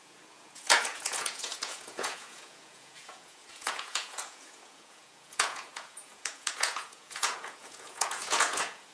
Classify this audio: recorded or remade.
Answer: remade